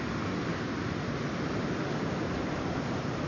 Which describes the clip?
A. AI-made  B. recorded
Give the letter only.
B